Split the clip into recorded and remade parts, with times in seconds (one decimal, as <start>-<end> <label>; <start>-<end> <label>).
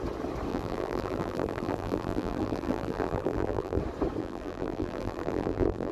0.0-0.5 recorded; 0.5-3.8 remade; 3.8-4.2 recorded; 4.2-5.9 remade